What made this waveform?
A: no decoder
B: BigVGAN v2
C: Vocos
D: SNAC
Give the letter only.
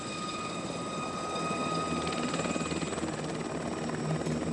A